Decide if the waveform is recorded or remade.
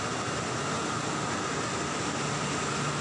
recorded